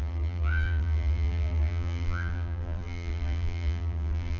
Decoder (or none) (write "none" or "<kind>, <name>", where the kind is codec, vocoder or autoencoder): vocoder, BigVGAN v2